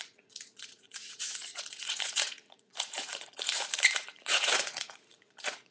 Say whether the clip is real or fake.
fake